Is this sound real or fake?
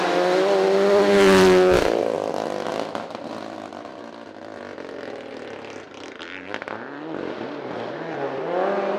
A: real